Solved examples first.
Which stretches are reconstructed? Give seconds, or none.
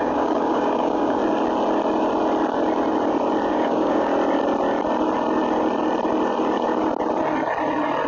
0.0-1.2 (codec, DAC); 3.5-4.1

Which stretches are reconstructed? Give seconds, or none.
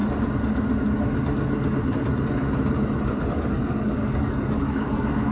3.2-5.3 (codec, DAC)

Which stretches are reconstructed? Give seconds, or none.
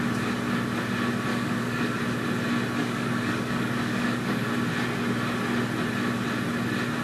1.3-2.0 (codec, DAC); 2.8-4.5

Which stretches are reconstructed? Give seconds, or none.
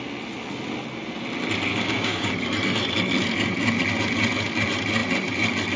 1.7-2.3 (codec, DAC)